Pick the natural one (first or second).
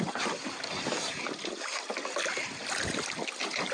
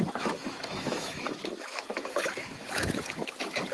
first